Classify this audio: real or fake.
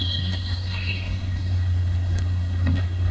fake